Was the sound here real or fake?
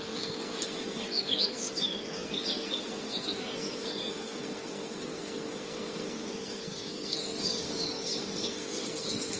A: fake